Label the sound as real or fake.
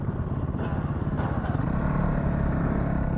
real